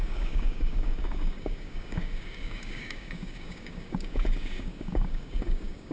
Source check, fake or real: fake